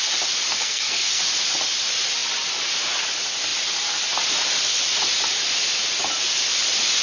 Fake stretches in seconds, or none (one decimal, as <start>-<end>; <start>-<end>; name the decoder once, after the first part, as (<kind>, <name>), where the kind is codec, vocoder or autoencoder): 0.5-1.2 (codec, SNAC)